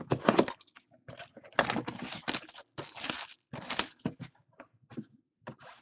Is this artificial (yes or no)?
no